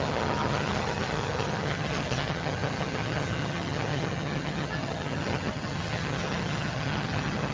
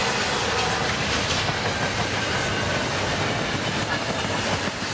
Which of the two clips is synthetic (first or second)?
first